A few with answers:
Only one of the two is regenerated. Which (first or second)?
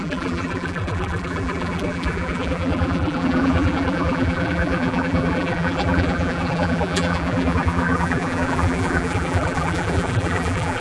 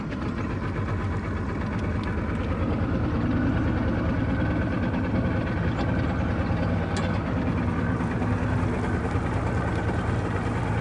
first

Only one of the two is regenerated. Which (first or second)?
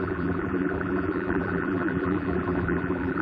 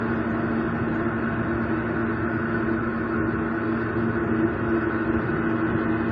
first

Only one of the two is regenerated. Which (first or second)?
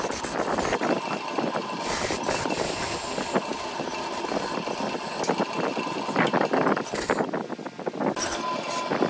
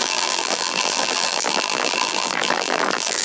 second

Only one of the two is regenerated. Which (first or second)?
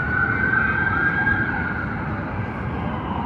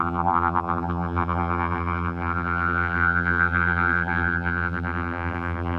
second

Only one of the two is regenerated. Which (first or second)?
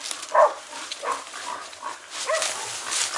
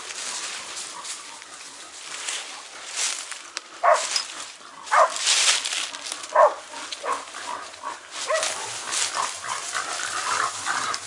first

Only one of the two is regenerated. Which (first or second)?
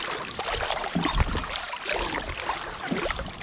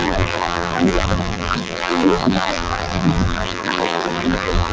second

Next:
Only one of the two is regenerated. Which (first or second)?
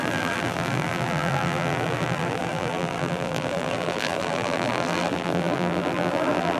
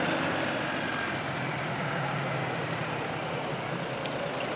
first